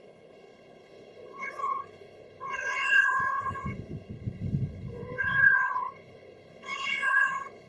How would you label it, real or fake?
fake